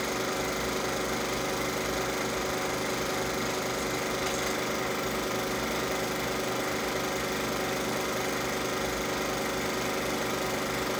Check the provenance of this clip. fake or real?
real